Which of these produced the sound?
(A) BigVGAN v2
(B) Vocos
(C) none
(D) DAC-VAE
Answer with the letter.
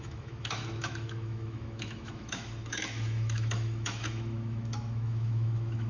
D